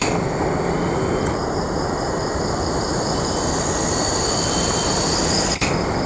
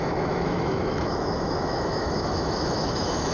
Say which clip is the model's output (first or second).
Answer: second